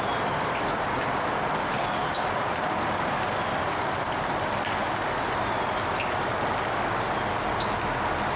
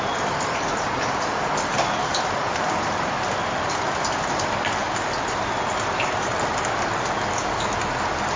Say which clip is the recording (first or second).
first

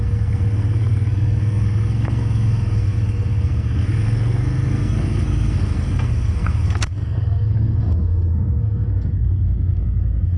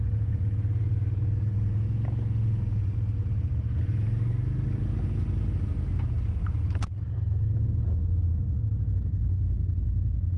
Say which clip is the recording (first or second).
second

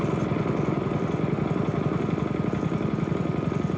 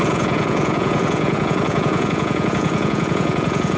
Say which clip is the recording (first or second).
first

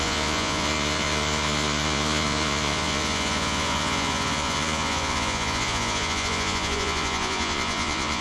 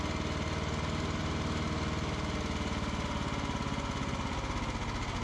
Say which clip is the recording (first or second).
second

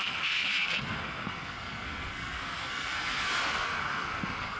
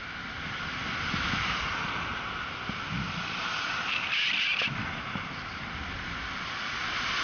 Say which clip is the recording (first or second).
second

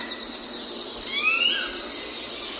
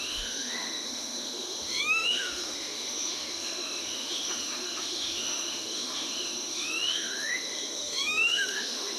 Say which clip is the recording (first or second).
first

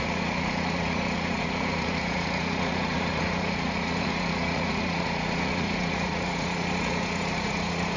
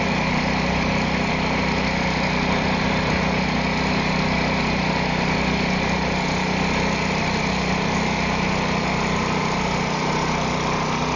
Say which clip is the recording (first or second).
second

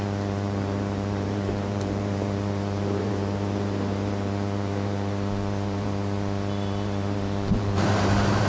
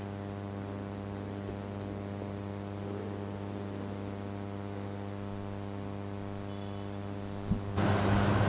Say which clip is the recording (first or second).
second